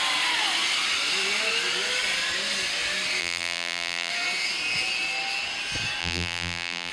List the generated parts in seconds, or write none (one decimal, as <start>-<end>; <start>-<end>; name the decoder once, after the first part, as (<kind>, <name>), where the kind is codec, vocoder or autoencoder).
3.2-4.1 (vocoder, BigVGAN v2); 6.0-6.9